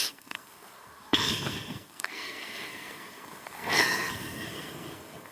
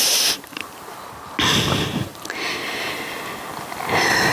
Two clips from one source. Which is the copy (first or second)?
first